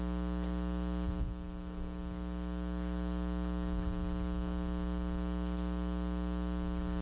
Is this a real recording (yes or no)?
yes